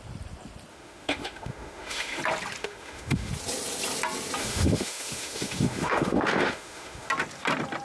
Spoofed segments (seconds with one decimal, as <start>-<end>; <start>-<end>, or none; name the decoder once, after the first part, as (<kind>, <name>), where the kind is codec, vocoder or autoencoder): 0.7-2.2 (autoencoder, DAC-VAE); 2.6-3.3; 4.4-7.1